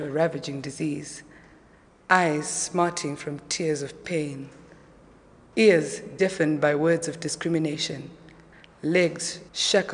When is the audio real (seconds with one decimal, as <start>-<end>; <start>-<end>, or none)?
0.0-9.9